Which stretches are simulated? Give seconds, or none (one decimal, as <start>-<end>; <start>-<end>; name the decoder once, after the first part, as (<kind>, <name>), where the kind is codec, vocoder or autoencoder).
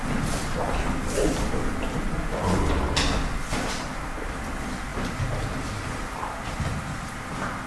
none